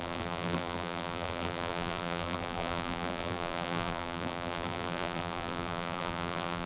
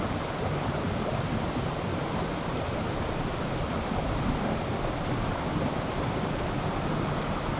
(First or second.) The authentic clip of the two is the second